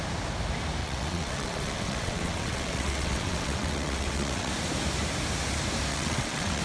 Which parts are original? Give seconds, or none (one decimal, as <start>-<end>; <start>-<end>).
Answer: 0.0-0.8; 4.5-5.9

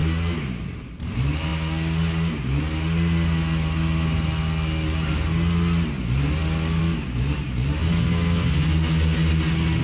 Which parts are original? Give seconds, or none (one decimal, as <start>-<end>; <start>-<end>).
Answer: 0.0-9.8

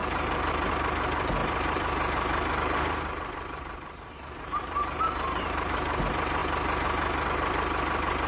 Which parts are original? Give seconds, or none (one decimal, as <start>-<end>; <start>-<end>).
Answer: 0.5-1.4; 6.0-8.3

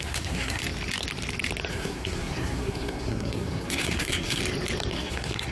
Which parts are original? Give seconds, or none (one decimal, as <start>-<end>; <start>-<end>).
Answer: 0.6-1.7; 4.4-4.9

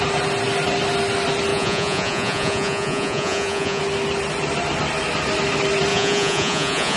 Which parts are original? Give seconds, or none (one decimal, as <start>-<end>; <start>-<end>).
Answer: 0.0-1.5; 3.8-5.9